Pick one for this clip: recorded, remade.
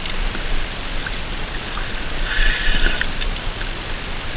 recorded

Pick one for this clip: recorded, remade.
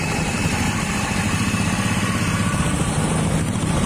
recorded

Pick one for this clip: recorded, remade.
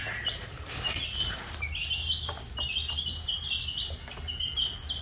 recorded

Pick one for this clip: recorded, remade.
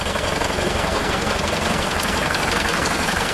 remade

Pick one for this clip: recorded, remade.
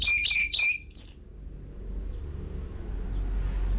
recorded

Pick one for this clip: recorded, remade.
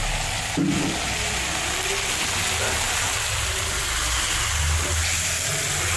recorded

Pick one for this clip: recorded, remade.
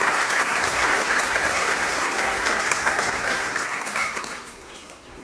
remade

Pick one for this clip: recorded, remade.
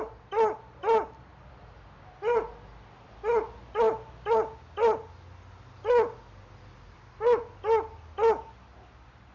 recorded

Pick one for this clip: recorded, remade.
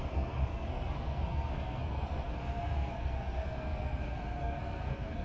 remade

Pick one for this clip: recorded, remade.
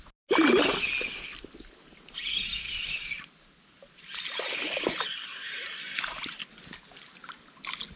recorded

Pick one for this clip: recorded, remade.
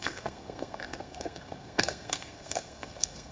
remade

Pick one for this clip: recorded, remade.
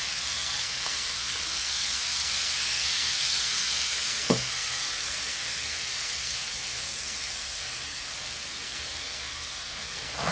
remade